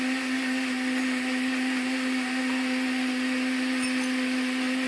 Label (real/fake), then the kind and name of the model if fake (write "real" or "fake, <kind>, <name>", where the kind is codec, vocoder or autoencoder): real